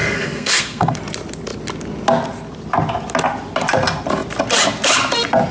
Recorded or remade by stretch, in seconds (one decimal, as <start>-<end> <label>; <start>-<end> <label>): 0.0-1.0 remade; 1.0-5.5 recorded